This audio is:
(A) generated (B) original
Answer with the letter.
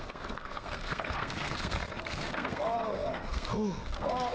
A